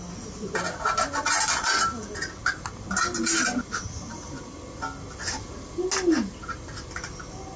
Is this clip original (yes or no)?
yes